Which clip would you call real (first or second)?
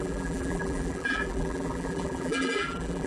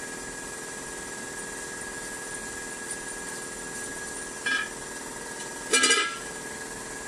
second